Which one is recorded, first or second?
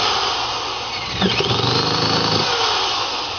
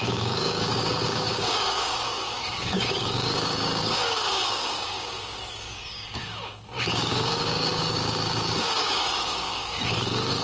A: first